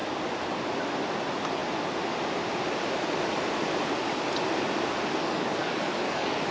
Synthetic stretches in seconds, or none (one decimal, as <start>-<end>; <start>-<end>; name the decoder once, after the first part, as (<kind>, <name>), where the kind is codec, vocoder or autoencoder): 5.2-6.5 (codec, DAC)